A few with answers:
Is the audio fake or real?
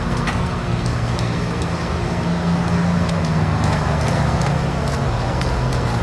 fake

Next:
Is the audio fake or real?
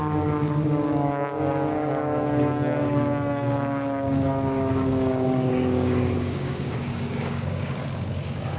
fake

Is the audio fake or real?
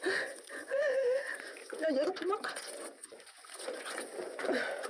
fake